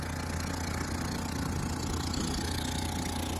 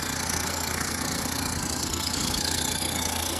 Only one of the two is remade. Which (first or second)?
second